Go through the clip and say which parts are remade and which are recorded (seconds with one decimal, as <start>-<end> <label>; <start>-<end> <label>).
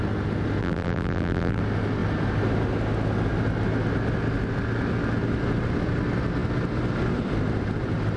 0.0-0.6 recorded; 0.6-1.6 remade; 1.6-8.2 recorded